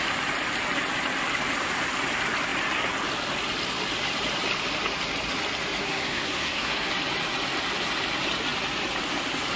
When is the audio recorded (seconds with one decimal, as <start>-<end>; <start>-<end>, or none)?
0.0-5.8; 6.9-9.6